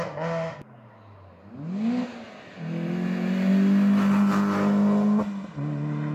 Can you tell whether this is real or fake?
real